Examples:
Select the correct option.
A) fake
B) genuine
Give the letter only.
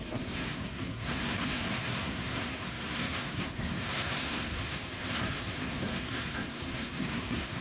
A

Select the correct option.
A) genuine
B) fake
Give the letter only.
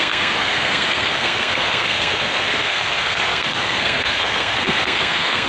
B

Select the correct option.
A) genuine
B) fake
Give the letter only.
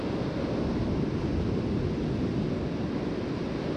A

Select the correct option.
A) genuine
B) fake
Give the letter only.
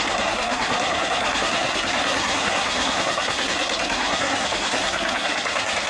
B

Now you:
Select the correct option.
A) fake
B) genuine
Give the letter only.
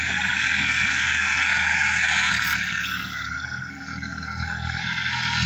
A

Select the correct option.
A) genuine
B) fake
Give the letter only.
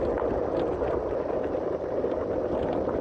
A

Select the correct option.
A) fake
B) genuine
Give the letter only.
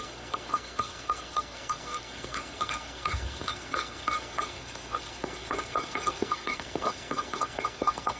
A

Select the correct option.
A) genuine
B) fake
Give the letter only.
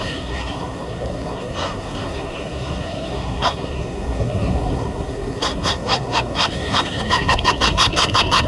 B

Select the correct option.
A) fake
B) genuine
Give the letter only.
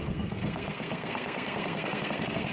A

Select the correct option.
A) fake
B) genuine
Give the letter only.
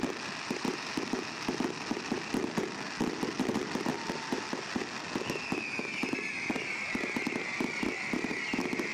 B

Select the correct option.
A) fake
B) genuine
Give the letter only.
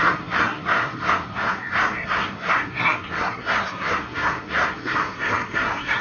A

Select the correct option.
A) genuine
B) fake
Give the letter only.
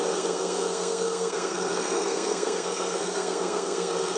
B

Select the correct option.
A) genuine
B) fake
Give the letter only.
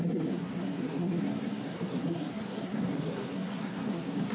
B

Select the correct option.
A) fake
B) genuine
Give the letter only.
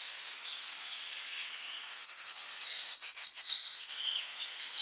A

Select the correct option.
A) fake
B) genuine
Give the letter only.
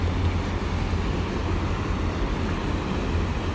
B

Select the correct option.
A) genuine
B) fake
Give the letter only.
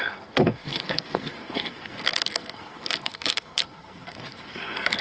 B